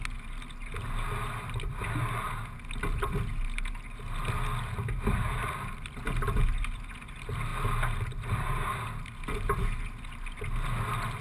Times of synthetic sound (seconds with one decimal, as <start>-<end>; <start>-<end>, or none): none